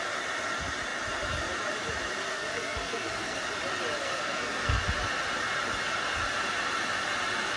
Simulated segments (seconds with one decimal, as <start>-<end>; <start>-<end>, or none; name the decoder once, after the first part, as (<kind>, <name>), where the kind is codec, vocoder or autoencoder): 2.3-3.4 (codec, SNAC); 4.0-4.8